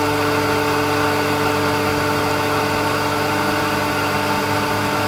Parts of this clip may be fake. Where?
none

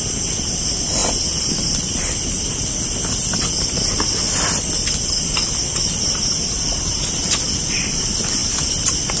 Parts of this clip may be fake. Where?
none

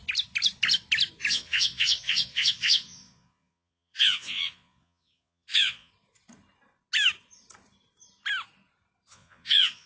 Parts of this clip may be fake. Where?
1.3-5.9 (vocoder, Vocos); 9.1-9.9